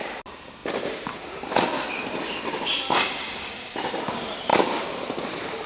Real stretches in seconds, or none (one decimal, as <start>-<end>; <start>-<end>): 0.0-5.7